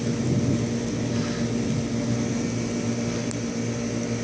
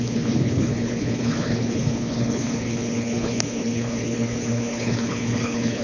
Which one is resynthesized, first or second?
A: second